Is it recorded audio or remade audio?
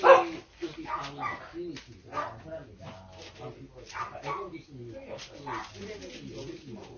recorded